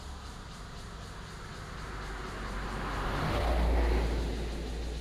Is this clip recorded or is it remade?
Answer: recorded